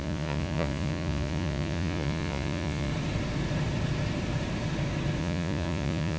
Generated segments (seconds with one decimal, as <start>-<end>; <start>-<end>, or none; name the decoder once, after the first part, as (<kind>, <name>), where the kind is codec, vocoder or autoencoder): 0.0-2.9 (vocoder, Vocos); 5.2-6.2